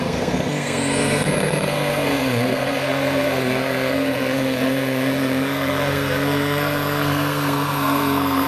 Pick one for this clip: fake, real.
fake